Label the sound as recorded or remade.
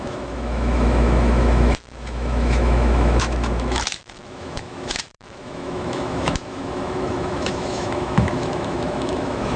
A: remade